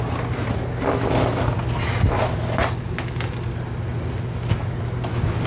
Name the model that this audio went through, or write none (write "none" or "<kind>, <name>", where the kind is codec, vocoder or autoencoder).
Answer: none